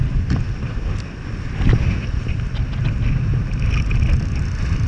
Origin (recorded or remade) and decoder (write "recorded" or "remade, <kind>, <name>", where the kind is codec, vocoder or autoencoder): recorded